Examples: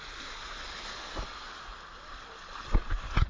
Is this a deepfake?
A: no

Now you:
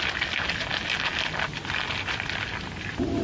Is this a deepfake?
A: no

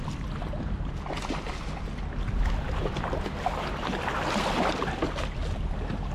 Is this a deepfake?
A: no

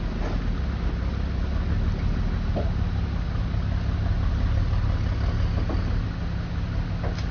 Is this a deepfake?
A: no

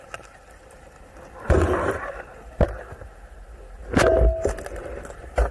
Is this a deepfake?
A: no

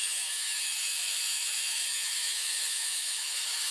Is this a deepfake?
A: yes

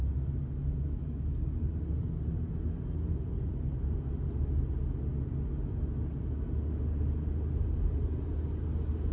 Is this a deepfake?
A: no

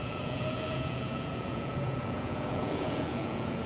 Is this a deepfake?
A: yes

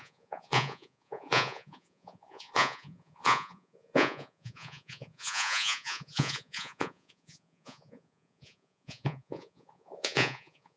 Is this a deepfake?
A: yes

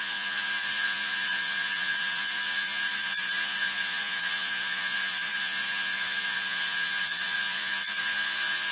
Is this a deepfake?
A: yes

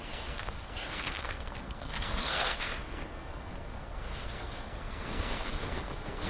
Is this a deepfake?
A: yes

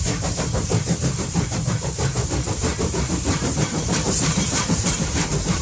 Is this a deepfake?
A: yes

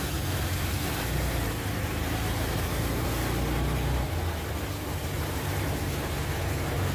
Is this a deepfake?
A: no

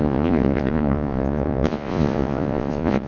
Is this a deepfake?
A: yes